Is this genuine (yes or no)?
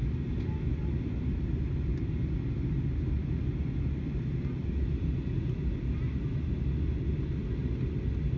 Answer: yes